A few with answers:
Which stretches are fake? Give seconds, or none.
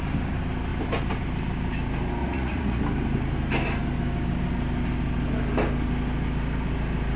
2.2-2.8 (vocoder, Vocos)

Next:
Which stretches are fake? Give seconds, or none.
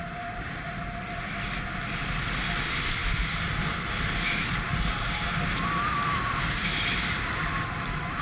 none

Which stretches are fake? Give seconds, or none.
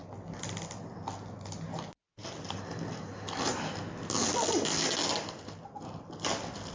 none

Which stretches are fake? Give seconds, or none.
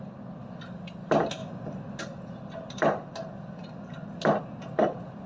none